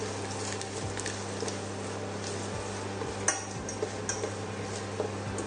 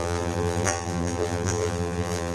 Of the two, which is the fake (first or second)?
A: second